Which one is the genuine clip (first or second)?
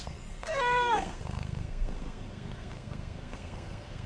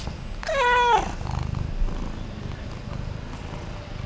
second